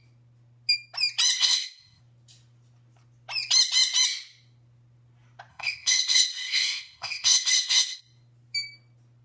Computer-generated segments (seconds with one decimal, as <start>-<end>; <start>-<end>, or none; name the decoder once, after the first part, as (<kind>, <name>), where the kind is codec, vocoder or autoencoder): 1.4-2.0 (codec, ZipCodec); 5.5-8.0